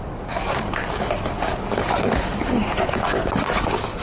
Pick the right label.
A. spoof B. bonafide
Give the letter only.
A